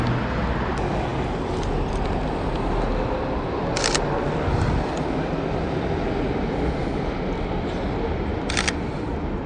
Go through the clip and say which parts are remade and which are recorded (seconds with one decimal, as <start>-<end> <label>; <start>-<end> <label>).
0.0-9.5 recorded